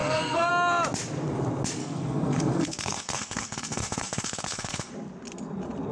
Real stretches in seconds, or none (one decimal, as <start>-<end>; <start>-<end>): 0.5-1.8; 4.9-5.9